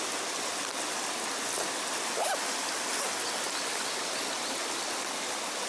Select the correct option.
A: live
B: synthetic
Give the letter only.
A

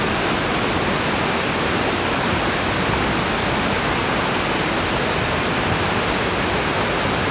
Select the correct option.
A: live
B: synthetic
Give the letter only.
A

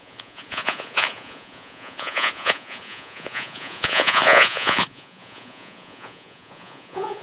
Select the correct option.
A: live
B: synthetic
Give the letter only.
B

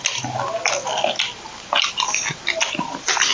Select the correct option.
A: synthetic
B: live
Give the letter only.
B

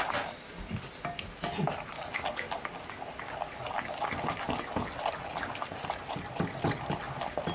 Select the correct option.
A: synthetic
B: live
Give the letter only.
B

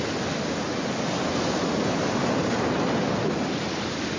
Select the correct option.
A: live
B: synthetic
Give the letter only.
A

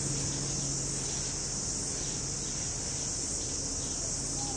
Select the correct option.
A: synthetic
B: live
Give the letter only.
B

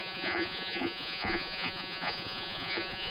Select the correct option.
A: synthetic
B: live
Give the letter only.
A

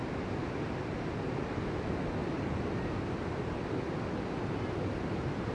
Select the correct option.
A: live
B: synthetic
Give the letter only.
A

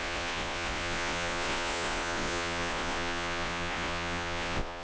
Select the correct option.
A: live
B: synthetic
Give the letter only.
B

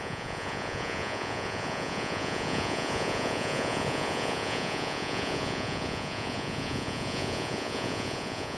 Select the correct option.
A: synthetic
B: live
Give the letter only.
A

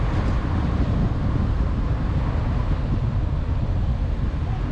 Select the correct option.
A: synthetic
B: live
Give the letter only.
B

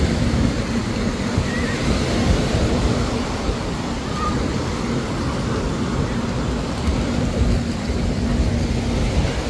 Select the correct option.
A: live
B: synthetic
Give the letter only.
A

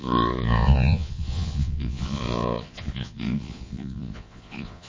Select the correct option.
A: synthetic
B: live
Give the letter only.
A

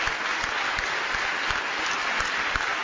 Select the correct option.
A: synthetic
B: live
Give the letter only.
B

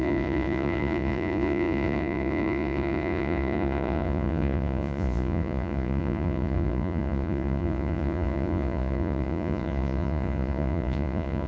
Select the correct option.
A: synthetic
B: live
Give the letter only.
A